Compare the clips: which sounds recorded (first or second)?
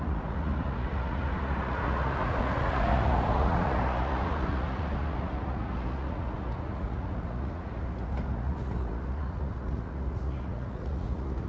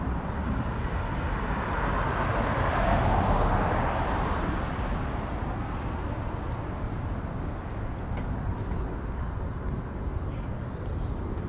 second